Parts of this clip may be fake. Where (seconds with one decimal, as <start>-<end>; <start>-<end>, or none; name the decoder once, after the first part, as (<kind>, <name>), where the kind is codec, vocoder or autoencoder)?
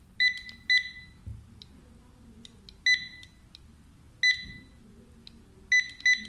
none